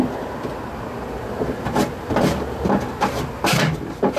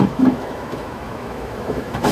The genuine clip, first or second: first